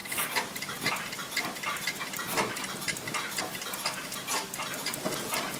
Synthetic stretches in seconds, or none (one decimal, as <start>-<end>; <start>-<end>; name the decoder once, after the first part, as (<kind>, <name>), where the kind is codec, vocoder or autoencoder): none